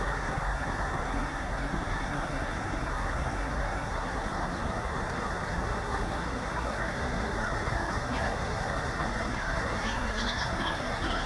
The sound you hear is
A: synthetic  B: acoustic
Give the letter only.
A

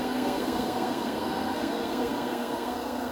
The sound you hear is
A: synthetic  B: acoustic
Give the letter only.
A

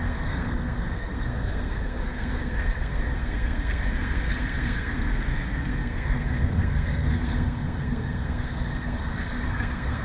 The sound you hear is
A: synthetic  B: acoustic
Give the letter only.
A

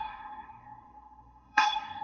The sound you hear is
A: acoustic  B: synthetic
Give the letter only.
B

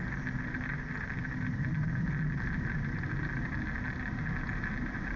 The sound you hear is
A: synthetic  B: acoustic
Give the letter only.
B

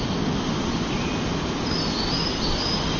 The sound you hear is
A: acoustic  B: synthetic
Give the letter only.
A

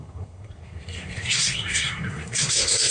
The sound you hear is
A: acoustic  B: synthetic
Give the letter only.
B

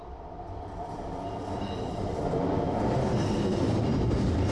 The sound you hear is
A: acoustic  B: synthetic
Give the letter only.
A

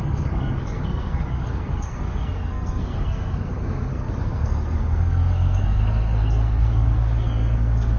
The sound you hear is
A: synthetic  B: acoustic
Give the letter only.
A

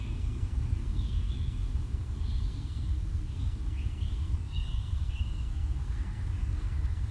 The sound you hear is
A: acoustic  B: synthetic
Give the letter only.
B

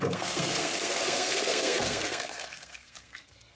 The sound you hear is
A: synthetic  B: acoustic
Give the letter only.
A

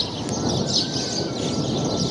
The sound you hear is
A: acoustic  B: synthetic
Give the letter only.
A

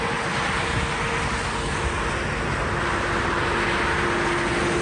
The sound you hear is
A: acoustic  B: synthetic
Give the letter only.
A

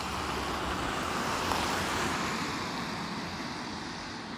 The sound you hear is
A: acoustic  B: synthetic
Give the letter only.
A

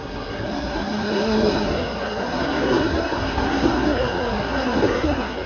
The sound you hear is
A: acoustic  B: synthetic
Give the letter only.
B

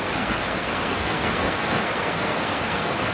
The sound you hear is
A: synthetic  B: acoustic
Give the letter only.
A